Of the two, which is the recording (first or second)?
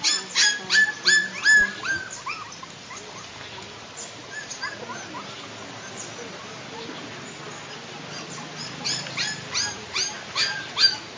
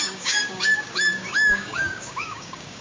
first